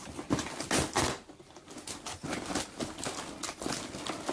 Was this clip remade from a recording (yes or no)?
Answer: no